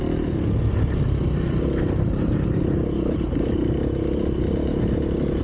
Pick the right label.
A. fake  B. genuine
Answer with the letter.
B